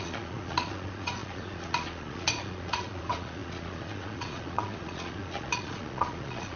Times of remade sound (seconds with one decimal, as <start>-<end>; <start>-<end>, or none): 0.0-6.6